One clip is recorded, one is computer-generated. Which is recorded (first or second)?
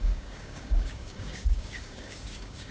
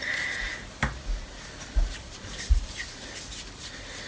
second